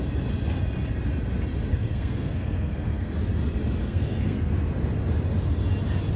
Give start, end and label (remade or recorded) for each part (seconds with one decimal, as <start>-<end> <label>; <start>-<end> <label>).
0.0-1.7 recorded; 1.7-3.1 remade; 3.1-3.8 recorded; 3.8-4.5 remade; 4.5-6.2 recorded

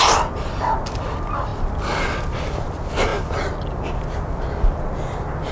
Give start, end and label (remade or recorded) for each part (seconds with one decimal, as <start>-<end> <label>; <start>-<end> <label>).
0.0-5.5 recorded

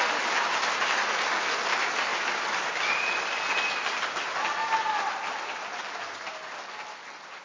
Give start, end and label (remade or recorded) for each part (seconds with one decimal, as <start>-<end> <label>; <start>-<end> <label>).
0.0-7.4 recorded

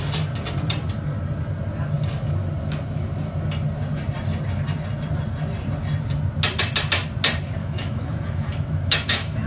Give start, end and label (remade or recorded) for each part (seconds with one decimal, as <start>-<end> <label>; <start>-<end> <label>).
0.0-7.6 recorded; 7.6-9.5 remade

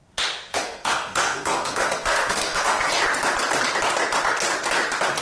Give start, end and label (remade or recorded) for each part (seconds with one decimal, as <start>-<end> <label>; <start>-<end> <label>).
0.0-0.5 recorded; 0.5-2.9 remade; 2.9-5.2 recorded

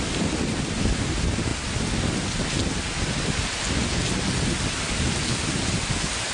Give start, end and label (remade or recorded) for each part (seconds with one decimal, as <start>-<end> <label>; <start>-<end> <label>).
0.0-6.3 recorded